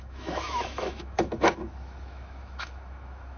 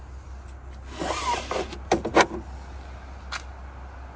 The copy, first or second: first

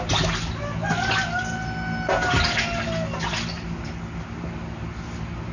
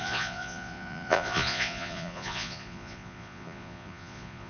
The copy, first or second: second